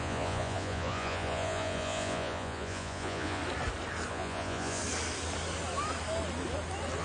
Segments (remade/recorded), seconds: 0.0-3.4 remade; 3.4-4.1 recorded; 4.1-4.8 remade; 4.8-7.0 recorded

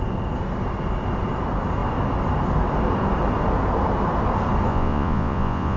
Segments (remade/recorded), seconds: 0.0-4.7 recorded; 4.7-5.8 remade

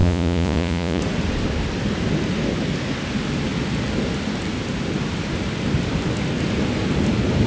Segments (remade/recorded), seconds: 0.0-1.0 remade; 1.0-7.5 recorded

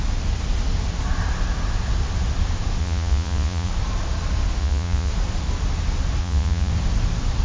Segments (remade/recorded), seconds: 0.0-2.8 recorded; 2.8-3.7 remade; 3.7-4.6 recorded; 4.6-5.1 remade; 5.1-6.2 recorded; 6.2-6.7 remade; 6.7-7.4 recorded